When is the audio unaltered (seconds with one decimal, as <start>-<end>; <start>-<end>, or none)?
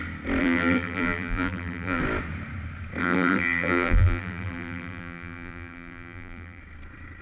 0.0-0.4; 2.0-3.0; 6.6-7.2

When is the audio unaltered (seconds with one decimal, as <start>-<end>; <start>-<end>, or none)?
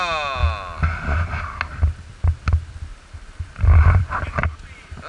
0.0-2.9; 4.0-5.1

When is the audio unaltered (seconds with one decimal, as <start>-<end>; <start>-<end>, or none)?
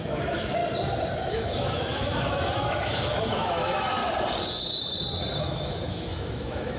0.6-1.3; 4.0-5.4